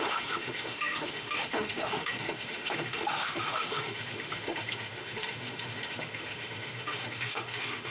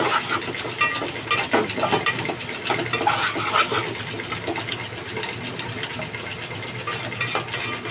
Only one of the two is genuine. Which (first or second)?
second